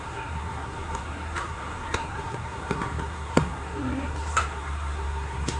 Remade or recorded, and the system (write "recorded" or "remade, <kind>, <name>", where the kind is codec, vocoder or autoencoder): remade, codec, SNAC